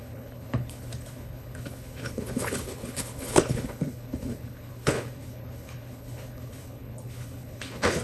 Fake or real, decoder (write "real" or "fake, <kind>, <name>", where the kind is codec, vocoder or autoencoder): fake, codec, HILCodec